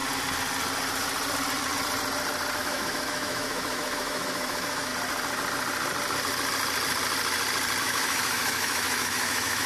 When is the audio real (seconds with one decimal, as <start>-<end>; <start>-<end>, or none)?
0.0-2.6; 4.9-7.8